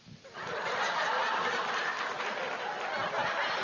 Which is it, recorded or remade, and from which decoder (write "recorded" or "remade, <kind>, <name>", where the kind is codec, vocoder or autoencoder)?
recorded